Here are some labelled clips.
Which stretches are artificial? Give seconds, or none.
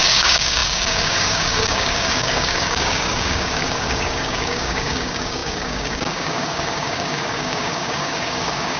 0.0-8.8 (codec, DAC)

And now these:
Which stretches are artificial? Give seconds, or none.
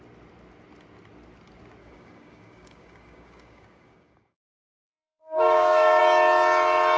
1.8-6.0 (codec, DAC)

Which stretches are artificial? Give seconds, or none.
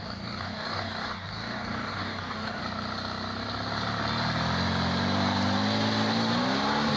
0.0-2.6 (codec, DAC)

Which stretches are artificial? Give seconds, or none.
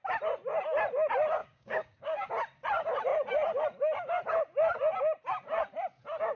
1.4-2.3 (codec, DAC)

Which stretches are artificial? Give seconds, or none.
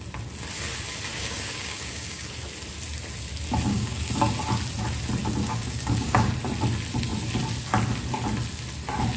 1.1-2.3 (codec, DAC); 3.7-4.2; 5.4-6.3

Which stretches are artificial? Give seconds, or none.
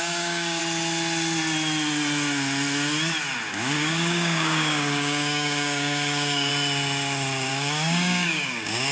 0.0-0.6 (codec, DAC); 3.5-6.5; 7.5-8.9